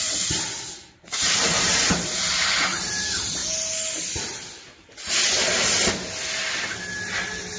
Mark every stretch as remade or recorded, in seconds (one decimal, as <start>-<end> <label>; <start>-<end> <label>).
0.0-3.4 remade; 3.4-7.0 recorded; 7.0-7.6 remade